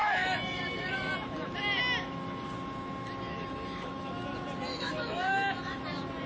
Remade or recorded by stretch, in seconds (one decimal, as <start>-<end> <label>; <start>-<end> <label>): 0.0-1.1 remade; 1.1-3.4 recorded; 3.4-4.1 remade; 4.1-4.7 recorded; 4.7-5.8 remade; 5.8-6.3 recorded